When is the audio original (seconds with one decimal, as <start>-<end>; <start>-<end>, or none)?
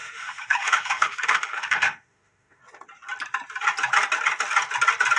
2.6-5.2